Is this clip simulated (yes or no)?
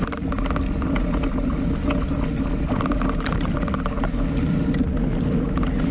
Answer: no